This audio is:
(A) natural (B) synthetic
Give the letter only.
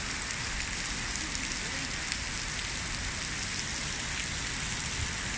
A